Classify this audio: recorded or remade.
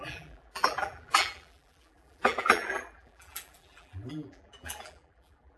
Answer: remade